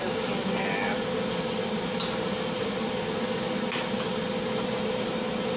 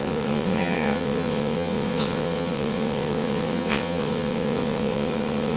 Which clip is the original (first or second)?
first